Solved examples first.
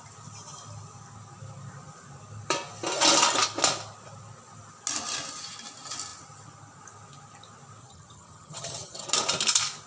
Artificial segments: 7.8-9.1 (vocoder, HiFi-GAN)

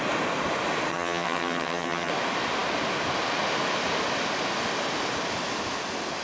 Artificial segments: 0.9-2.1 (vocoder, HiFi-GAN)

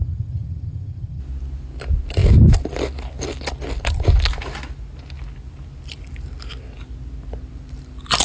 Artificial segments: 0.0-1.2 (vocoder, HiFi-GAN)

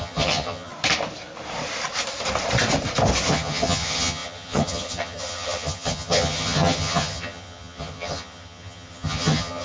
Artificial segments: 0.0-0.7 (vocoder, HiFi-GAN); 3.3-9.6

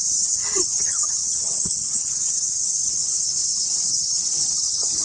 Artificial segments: 0.0-5.0 (vocoder, HiFi-GAN)